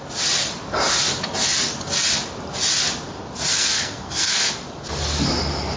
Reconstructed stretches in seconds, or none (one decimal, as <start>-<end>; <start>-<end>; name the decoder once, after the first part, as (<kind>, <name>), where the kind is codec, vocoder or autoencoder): 3.5-4.5 (codec, SNAC)